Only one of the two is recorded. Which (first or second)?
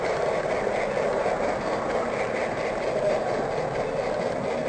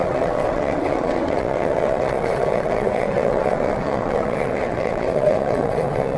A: first